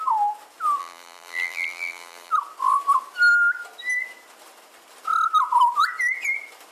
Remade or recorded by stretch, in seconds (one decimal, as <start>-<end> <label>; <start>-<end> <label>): 0.0-0.8 recorded; 0.8-2.3 remade; 2.3-6.7 recorded